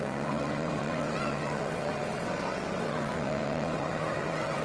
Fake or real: fake